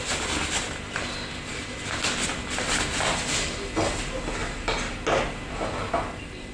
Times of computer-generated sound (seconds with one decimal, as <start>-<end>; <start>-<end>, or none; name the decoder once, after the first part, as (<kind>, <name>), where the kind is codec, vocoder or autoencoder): none